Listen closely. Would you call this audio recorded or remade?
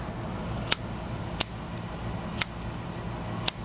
recorded